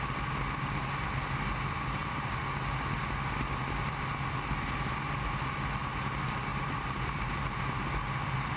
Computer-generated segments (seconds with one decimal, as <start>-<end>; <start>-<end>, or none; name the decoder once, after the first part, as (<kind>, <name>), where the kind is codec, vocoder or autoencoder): 6.5-7.6 (vocoder, BigVGAN v2)